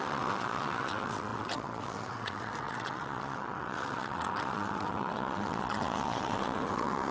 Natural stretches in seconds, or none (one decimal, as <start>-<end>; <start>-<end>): none